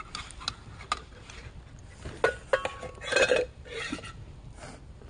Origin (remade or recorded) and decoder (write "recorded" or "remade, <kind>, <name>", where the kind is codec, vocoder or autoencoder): recorded